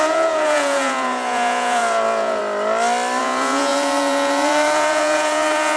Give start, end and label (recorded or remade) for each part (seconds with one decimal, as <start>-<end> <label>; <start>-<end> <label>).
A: 0.0-2.4 remade; 2.4-3.2 recorded; 3.2-5.8 remade